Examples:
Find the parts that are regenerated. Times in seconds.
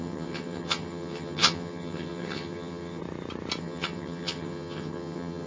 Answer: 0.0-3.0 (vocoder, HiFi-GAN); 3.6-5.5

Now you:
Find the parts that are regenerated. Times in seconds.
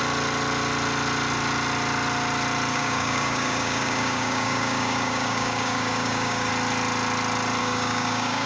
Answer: 2.7-6.5 (codec, DAC); 7.6-8.5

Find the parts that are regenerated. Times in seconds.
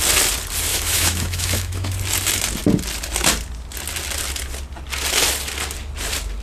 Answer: 0.7-1.9 (autoencoder, DAC-VAE)